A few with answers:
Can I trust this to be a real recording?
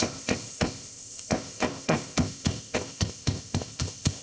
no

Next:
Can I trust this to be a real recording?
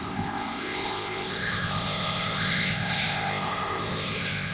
no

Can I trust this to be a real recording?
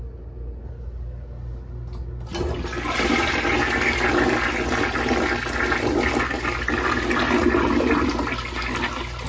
yes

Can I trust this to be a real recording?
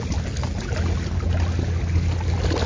yes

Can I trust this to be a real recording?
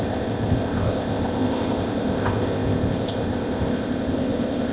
no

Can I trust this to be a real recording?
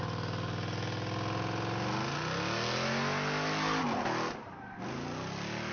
yes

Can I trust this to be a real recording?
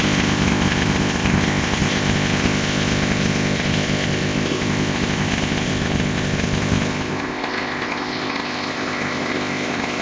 no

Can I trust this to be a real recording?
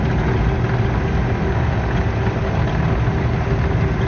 yes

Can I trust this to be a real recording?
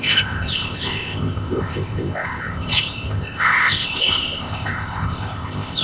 no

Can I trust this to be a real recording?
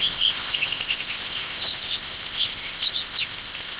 no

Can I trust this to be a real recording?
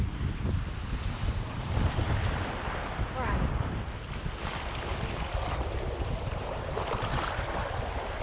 yes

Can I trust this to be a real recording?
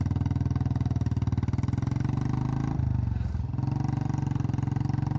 yes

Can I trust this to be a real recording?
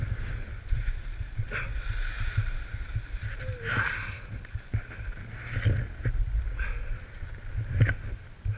yes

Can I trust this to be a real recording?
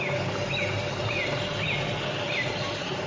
yes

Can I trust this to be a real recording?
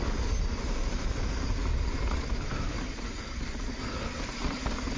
yes